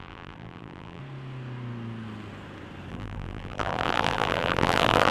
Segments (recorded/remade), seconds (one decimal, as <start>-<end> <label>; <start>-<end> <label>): 0.0-1.0 remade; 1.0-2.9 recorded; 2.9-5.1 remade